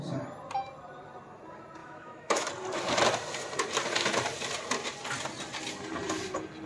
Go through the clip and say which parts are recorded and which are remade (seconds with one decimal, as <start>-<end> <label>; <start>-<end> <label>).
0.0-1.8 recorded; 1.8-2.5 remade; 2.5-6.7 recorded